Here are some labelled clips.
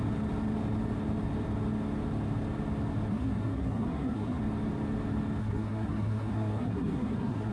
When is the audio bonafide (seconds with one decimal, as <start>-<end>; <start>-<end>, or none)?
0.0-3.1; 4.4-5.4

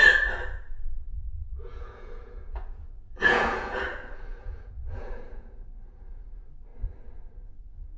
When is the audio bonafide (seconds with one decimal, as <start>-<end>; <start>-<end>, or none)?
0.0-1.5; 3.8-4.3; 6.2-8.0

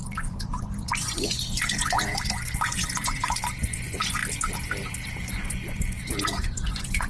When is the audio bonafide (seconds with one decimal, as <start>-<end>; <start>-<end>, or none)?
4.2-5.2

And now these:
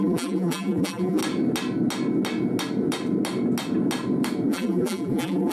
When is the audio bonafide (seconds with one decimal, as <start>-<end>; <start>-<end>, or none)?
1.2-4.5